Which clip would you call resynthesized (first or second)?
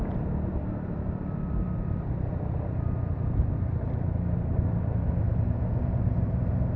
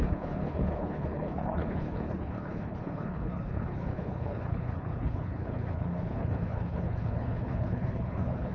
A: second